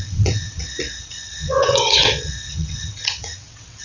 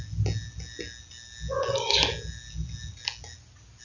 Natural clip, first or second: second